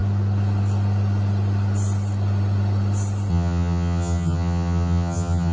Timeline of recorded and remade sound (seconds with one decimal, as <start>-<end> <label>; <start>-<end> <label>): 0.0-3.3 recorded; 3.3-5.5 remade